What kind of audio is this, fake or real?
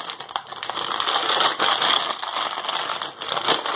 real